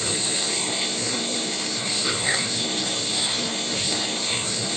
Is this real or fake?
fake